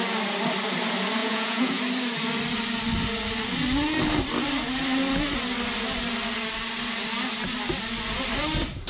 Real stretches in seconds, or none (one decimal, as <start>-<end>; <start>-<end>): 0.0-1.2; 1.8-8.9